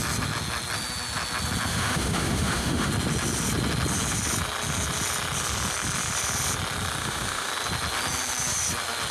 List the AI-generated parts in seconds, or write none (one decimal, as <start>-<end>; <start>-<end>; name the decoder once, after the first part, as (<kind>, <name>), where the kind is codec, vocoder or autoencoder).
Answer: 1.7-2.9 (autoencoder, DAC-VAE); 7.0-7.5